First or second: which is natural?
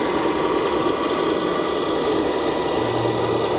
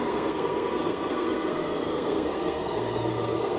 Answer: first